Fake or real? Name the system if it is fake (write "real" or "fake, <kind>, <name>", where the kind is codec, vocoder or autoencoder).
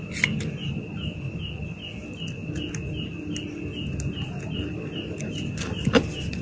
real